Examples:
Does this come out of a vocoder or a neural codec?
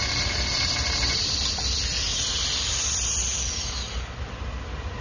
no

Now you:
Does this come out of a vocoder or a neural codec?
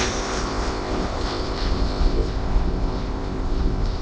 yes